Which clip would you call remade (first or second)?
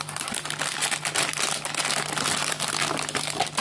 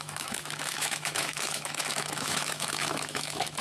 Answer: second